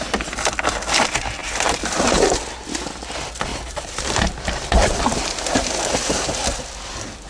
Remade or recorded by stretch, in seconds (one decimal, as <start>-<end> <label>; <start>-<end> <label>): 0.0-1.4 recorded; 1.4-2.4 remade; 2.4-3.5 recorded; 3.5-5.7 remade; 5.7-7.3 recorded